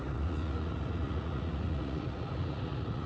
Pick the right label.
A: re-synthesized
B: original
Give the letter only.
A